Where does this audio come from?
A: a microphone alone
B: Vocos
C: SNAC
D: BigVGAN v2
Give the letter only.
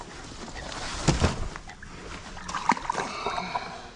A